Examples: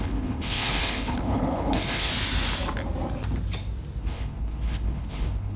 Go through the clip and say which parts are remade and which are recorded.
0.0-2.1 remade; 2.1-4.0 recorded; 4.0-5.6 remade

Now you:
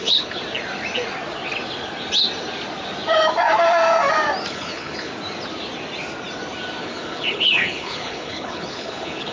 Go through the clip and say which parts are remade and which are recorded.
0.0-0.4 remade; 0.4-4.5 recorded; 4.5-5.1 remade; 5.1-6.8 recorded; 6.8-9.3 remade

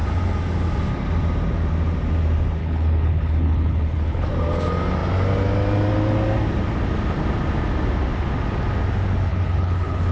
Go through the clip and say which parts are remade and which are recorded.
0.0-2.6 recorded; 2.6-4.3 remade; 4.3-9.3 recorded; 9.3-10.1 remade

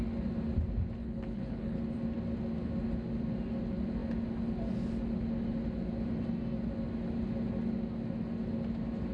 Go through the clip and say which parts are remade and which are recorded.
0.0-1.0 recorded; 1.0-1.8 remade; 1.8-9.1 recorded

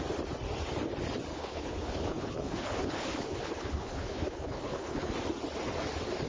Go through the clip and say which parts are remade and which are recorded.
0.0-1.3 recorded; 1.3-5.1 remade; 5.1-6.3 recorded